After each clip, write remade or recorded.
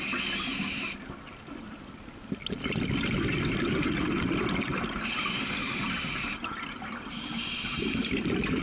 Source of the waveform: recorded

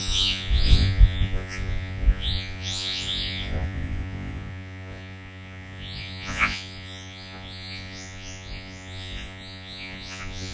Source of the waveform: remade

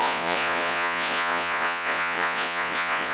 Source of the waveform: remade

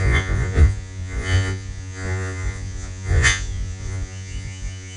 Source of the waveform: remade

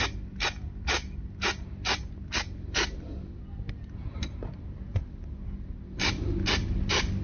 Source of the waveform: recorded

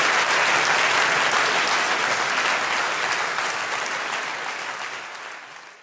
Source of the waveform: recorded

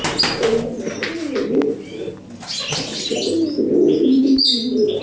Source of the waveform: recorded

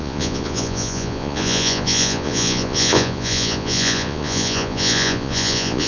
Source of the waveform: remade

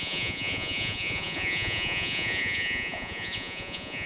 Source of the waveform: remade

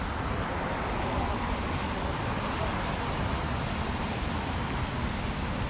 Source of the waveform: recorded